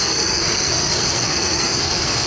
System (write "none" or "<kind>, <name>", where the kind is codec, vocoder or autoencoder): codec, SNAC